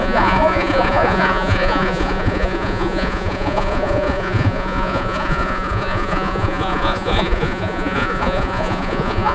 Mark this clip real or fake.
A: fake